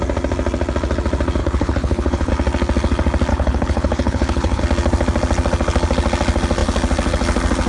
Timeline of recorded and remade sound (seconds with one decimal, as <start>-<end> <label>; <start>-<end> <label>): 0.0-1.4 recorded; 1.4-2.3 remade; 2.3-3.3 recorded; 3.3-4.6 remade; 4.6-7.7 recorded